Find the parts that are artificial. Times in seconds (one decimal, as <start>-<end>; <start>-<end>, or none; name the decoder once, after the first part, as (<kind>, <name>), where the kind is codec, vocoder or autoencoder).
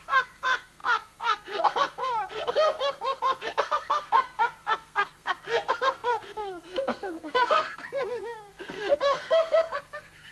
0.0-10.3 (codec, SNAC)